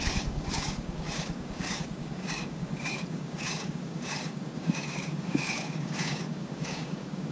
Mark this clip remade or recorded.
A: remade